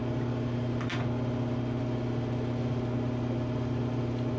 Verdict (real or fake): real